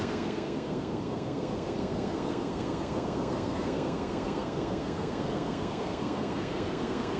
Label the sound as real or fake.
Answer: fake